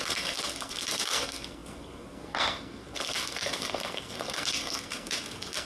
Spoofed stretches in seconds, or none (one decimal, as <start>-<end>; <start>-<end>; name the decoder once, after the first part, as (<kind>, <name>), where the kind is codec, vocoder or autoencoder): 0.0-5.6 (codec, SNAC)